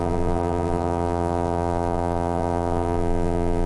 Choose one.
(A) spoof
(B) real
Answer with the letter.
A